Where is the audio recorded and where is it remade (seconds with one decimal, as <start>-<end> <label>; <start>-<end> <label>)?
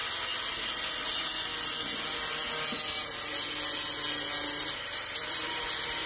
0.0-0.5 recorded; 0.5-1.5 remade; 1.5-4.6 recorded; 4.6-6.1 remade